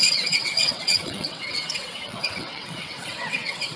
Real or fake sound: fake